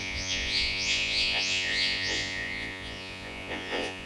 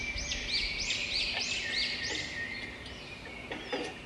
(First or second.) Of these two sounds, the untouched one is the second